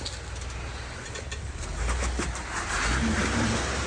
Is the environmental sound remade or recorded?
recorded